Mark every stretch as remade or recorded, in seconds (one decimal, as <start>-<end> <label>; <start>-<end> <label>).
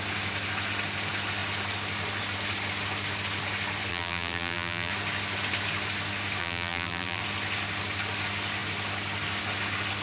0.0-3.9 recorded; 3.9-4.9 remade; 4.9-6.4 recorded; 6.4-7.2 remade; 7.2-10.0 recorded